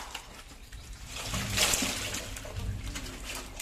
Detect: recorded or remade recorded